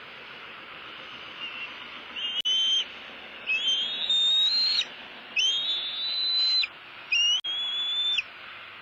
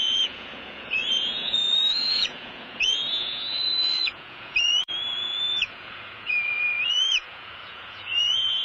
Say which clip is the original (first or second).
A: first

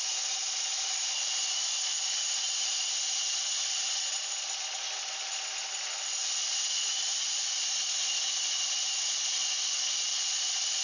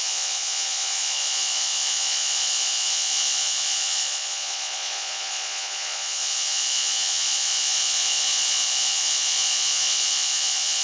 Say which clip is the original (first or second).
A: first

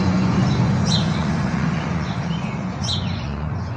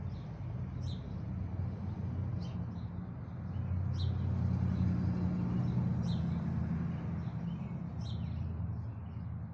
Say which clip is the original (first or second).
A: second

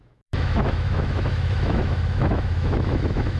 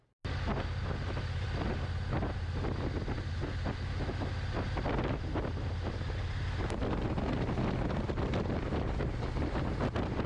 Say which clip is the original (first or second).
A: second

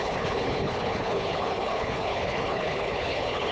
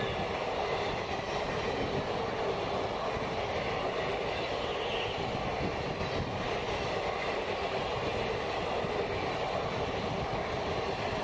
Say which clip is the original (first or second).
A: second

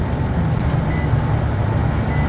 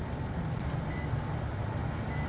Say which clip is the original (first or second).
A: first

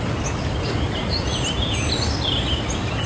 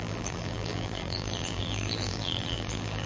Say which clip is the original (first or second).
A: first